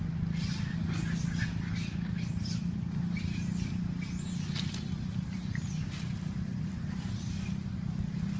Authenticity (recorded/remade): recorded